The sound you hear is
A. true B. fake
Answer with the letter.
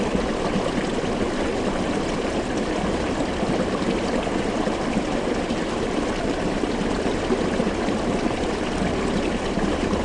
A